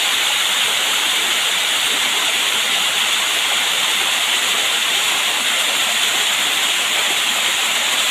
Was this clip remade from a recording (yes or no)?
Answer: yes